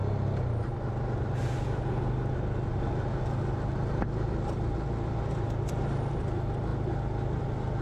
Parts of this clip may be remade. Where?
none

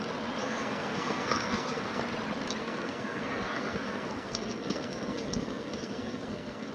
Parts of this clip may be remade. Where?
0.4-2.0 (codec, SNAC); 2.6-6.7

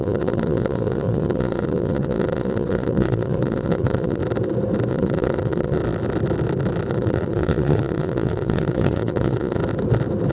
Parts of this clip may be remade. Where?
0.0-4.2 (vocoder, Vocos); 4.9-5.8; 6.9-9.6

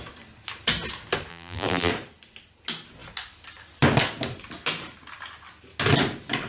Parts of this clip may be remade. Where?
1.3-1.9 (vocoder, BigVGAN v2)

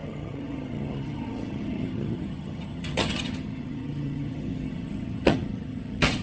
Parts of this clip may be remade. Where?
0.0-6.2 (vocoder, HiFi-GAN)